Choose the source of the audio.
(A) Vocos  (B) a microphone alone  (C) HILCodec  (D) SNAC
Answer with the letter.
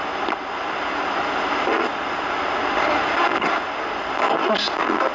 B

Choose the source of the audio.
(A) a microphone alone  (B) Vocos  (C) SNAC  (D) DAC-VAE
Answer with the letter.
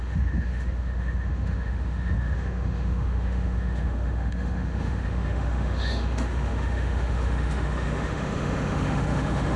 D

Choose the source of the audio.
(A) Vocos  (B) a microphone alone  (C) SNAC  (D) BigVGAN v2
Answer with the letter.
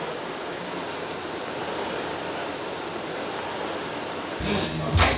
B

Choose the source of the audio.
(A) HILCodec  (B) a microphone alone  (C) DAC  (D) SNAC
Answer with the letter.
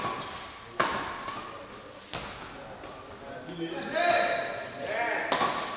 B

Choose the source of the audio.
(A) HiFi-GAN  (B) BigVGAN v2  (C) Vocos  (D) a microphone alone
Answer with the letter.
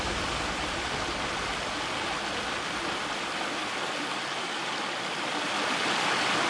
D